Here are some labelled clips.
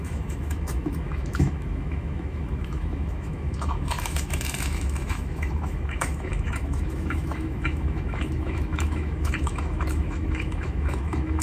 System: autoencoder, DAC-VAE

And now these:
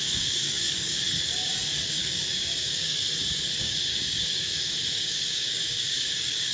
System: codec, DAC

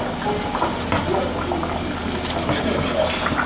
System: none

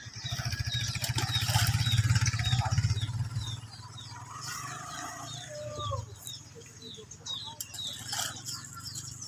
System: none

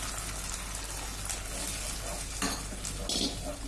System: none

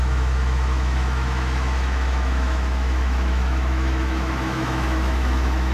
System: autoencoder, DAC-VAE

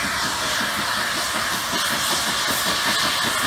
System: none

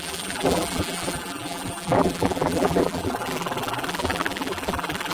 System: vocoder, BigVGAN v2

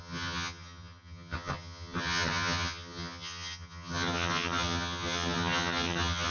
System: vocoder, HiFi-GAN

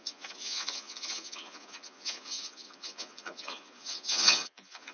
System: vocoder, Vocos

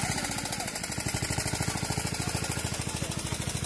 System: none